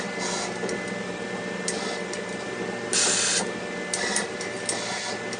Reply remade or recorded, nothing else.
recorded